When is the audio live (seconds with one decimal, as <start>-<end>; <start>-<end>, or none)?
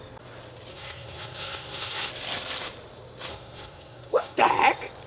0.0-0.7; 2.1-3.3; 4.5-5.1